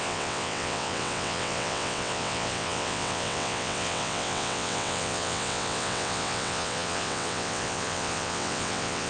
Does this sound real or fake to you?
fake